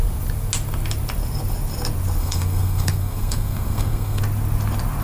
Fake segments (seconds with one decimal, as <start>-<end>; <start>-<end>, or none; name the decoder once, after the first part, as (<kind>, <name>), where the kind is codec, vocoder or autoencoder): 2.2-4.2 (codec, SNAC)